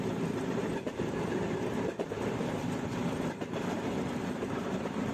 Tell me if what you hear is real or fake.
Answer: fake